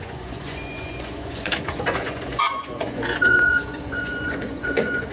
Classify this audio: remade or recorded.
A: remade